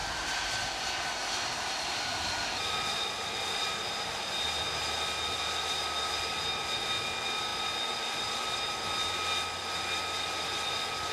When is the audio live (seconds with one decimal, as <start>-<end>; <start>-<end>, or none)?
0.0-11.1